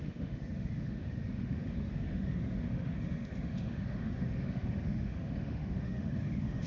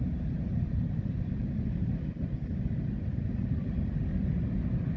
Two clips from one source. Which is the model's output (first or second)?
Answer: first